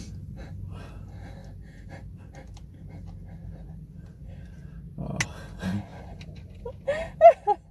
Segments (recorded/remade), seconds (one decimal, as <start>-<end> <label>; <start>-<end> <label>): 0.0-7.7 recorded